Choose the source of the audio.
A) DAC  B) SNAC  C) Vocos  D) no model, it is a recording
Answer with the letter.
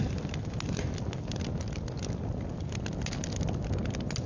D